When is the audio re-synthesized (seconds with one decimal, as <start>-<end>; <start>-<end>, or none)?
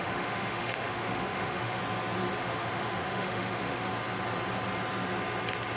0.0-1.8; 2.4-3.9